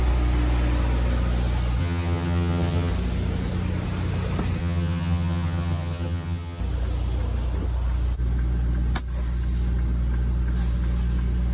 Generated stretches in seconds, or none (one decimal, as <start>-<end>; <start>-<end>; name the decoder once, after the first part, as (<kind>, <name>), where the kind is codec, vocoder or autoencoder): 1.8-2.9 (vocoder, HiFi-GAN); 4.6-6.6